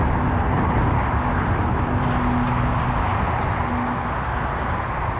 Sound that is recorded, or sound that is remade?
recorded